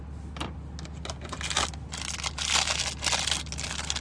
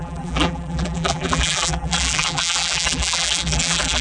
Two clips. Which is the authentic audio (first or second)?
first